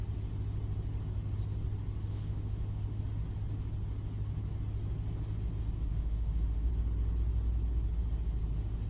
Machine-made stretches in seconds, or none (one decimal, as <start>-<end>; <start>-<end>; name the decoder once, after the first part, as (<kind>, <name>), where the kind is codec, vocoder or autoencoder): 2.1-3.0 (autoencoder, DAC-VAE); 5.9-6.7